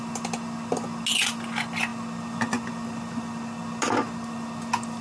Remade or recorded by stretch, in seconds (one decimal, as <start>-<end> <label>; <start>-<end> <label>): 0.0-5.0 recorded